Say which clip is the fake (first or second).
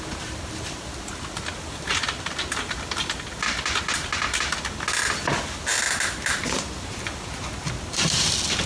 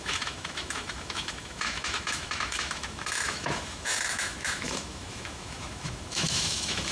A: second